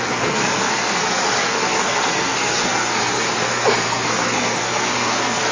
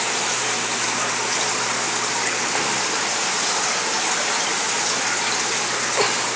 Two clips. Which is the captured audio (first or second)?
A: second